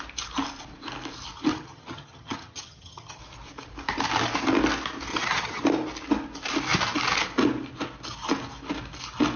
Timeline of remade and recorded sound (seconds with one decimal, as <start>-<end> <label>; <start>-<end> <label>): 0.0-1.5 recorded; 1.5-3.2 remade; 3.2-5.1 recorded; 5.1-5.6 remade; 5.6-9.4 recorded